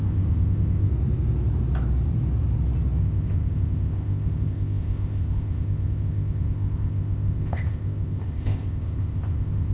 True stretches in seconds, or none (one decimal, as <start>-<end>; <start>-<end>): 0.9-3.0